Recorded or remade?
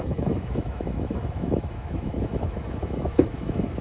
remade